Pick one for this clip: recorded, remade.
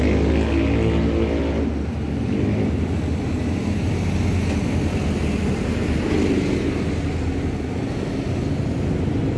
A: recorded